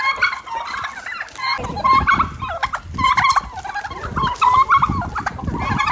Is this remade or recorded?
recorded